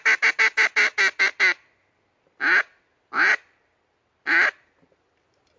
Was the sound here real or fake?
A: real